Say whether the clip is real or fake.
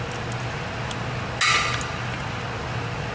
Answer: real